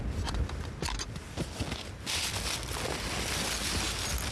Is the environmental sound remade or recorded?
recorded